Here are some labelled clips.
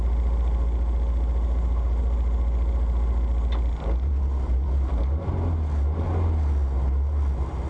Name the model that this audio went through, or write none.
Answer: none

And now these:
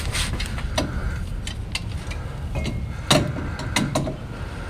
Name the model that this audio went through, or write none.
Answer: none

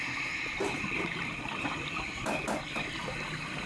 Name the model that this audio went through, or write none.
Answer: none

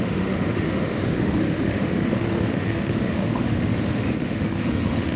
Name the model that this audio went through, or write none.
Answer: autoencoder, DAC-VAE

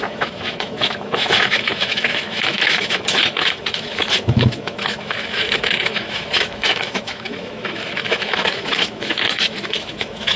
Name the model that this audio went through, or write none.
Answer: autoencoder, DAC-VAE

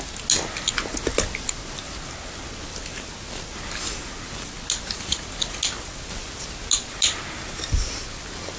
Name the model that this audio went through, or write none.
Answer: none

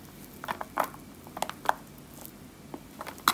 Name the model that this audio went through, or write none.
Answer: none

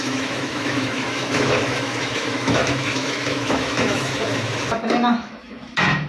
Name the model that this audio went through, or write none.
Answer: autoencoder, DAC-VAE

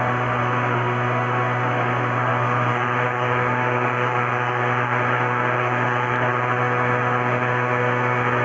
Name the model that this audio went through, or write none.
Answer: autoencoder, DAC-VAE